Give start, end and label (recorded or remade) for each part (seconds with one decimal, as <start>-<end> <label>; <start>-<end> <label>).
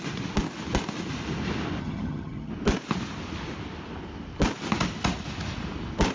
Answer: 0.0-1.8 recorded; 1.8-2.5 remade; 2.5-6.1 recorded